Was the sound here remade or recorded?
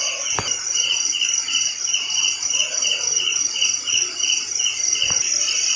recorded